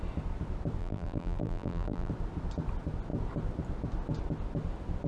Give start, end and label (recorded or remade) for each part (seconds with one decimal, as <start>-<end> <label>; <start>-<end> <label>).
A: 0.0-0.8 recorded; 0.8-2.1 remade; 2.1-5.1 recorded

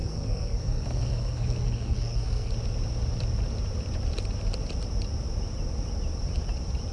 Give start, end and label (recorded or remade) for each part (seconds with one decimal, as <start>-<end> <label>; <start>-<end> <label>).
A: 0.0-2.5 remade; 2.5-6.9 recorded

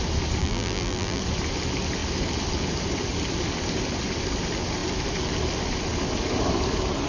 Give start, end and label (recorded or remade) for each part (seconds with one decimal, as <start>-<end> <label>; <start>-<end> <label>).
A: 0.0-0.4 recorded; 0.4-1.2 remade; 1.2-7.1 recorded